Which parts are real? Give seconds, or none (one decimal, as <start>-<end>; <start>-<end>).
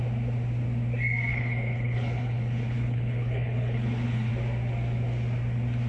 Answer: 0.0-1.3; 4.3-5.9